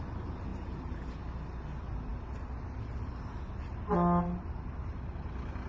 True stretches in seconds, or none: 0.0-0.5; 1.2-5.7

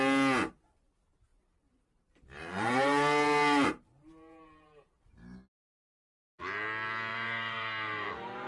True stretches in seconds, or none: 0.0-1.3; 6.4-7.1; 8.1-8.5

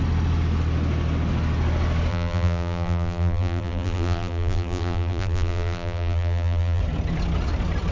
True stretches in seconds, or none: 0.0-2.1; 6.8-7.9

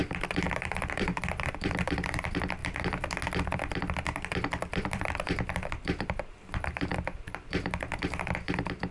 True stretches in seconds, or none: 2.6-3.4

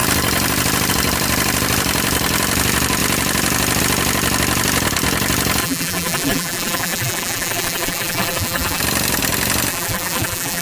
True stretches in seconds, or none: 0.0-5.6; 8.8-9.7

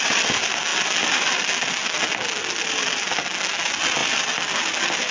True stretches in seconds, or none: 0.0-0.7; 1.3-4.0

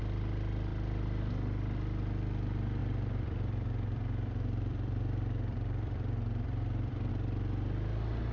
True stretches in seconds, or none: 0.0-0.7; 1.3-2.8; 7.1-8.3